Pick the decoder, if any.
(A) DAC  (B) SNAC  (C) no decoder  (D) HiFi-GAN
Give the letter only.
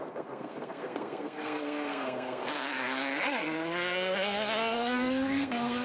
B